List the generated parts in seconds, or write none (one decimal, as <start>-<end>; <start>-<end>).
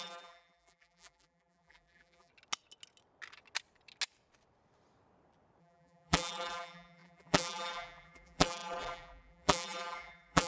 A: 0.0-2.3; 5.6-10.5